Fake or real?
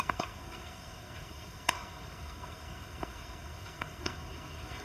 fake